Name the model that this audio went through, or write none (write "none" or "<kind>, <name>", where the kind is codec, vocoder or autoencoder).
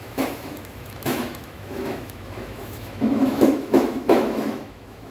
autoencoder, DAC-VAE